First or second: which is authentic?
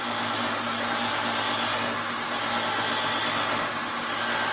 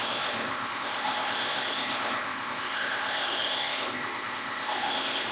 first